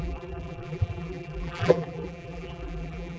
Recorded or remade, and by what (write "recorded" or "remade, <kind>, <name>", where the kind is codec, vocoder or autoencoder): remade, vocoder, BigVGAN v2